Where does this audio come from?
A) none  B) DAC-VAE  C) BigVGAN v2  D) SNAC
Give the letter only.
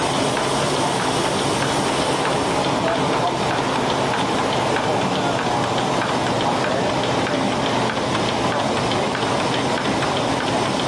A